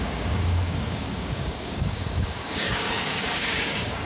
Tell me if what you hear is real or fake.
fake